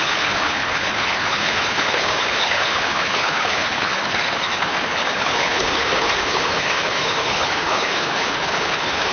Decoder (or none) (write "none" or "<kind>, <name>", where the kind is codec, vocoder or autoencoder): codec, HILCodec